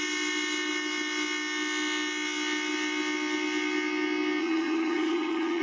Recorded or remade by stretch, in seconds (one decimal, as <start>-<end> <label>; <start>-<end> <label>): 0.0-4.4 recorded; 4.4-5.6 remade